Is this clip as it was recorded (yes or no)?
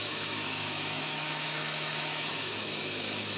no